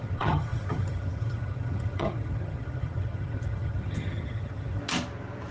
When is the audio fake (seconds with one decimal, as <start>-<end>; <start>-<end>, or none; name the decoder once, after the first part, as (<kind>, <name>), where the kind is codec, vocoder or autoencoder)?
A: 0.0-4.8 (vocoder, HiFi-GAN)